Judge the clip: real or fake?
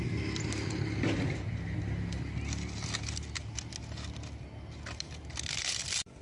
real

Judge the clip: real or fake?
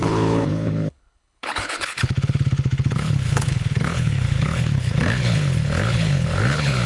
fake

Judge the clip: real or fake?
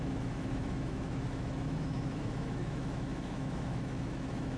fake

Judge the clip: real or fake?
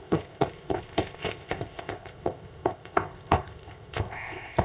fake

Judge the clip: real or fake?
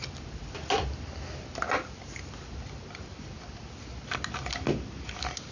real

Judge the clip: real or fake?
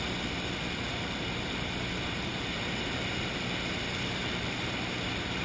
real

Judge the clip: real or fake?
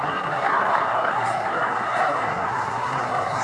fake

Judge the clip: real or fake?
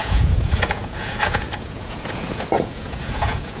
fake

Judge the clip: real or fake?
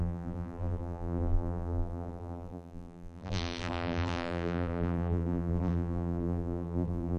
fake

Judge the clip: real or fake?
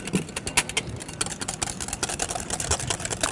real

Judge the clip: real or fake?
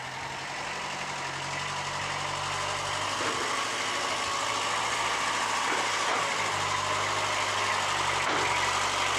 real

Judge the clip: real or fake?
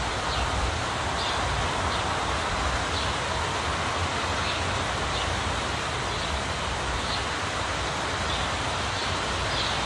real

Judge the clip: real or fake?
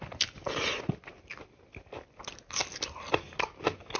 real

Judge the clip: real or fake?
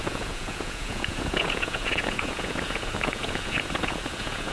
fake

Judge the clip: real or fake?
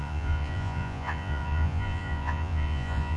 fake